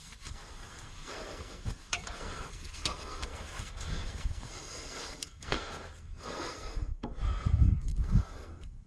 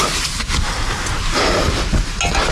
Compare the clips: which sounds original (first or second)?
second